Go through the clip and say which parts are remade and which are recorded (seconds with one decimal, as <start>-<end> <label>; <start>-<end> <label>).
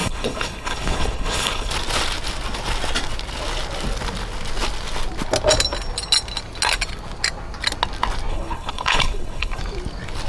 0.0-1.7 remade; 1.7-8.3 recorded; 8.3-9.6 remade; 9.6-10.3 recorded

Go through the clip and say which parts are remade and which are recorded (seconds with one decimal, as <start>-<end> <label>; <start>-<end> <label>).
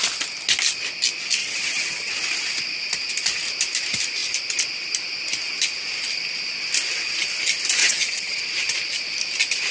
0.0-1.4 recorded; 1.4-2.1 remade; 2.1-7.8 recorded; 7.8-8.4 remade; 8.4-9.7 recorded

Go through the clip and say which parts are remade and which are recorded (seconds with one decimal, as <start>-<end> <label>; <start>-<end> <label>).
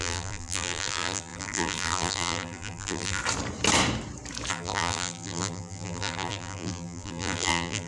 0.0-3.2 remade; 3.2-4.5 recorded; 4.5-7.9 remade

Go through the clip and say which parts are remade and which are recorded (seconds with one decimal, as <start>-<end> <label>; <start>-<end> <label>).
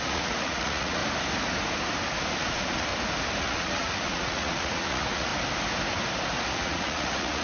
0.0-1.0 remade; 1.0-2.4 recorded; 2.4-2.9 remade; 2.9-3.4 recorded; 3.4-5.3 remade; 5.3-6.5 recorded; 6.5-7.4 remade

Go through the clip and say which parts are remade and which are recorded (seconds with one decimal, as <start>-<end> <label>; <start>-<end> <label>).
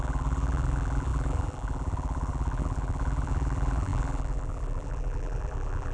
0.0-5.9 remade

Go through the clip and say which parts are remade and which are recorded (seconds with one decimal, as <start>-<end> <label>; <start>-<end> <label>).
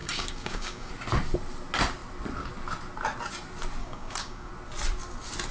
0.0-0.9 remade; 0.9-3.8 recorded; 3.8-4.5 remade; 4.5-5.5 recorded